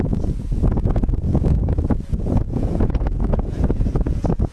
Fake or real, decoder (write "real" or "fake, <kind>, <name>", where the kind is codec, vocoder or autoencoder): fake, vocoder, Vocos